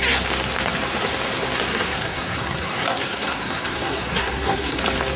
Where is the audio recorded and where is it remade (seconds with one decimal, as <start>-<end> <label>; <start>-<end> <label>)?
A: 0.0-1.7 recorded; 1.7-4.8 remade; 4.8-5.2 recorded